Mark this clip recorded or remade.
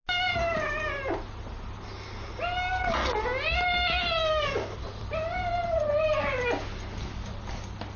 recorded